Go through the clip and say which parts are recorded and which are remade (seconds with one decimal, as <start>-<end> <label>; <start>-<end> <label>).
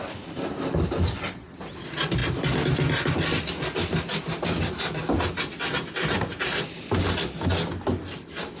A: 0.0-8.6 recorded